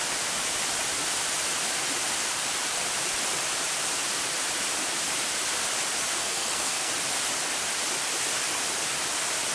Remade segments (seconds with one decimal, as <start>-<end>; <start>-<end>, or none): 6.2-6.9